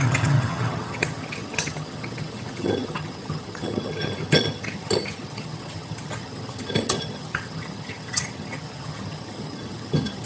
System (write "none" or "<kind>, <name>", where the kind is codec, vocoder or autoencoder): vocoder, HiFi-GAN